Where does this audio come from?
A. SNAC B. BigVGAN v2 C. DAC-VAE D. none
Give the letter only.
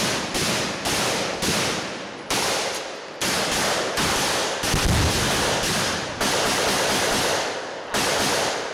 D